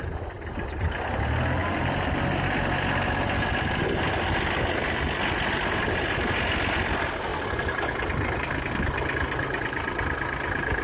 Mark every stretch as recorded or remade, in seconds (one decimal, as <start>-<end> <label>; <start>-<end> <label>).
0.0-10.8 recorded